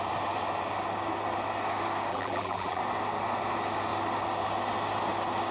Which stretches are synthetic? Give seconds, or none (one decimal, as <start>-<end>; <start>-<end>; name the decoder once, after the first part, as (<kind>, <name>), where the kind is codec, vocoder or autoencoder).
2.1-2.8 (vocoder, BigVGAN v2)